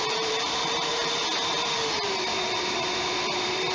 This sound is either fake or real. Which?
fake